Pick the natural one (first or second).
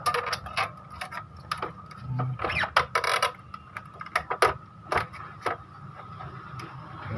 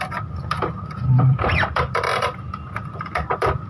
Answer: first